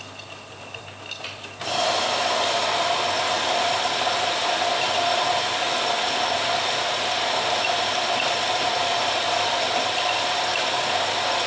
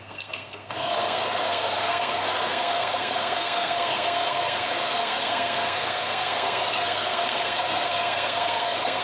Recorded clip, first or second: first